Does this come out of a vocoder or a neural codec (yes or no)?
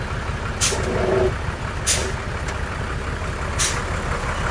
no